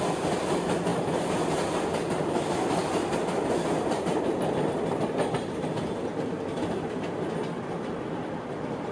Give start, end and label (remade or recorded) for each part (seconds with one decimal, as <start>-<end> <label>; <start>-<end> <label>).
0.0-8.9 recorded